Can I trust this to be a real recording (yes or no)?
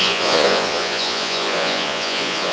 no